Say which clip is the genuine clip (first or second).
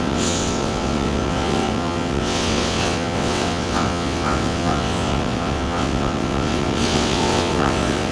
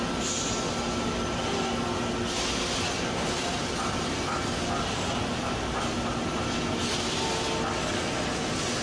second